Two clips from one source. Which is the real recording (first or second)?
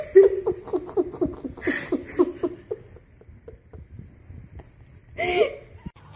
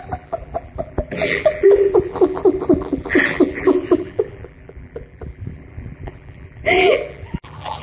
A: first